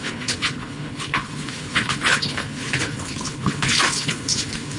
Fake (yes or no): yes